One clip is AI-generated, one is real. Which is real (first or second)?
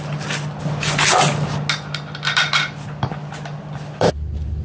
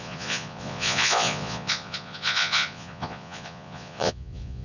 first